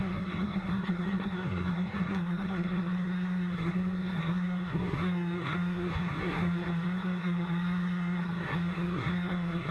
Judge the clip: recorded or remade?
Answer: remade